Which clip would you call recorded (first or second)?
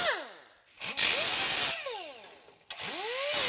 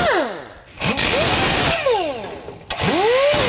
first